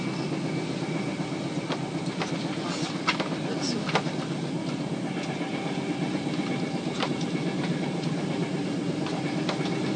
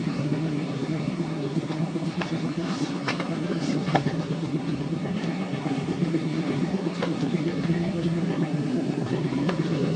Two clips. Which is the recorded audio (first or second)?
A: first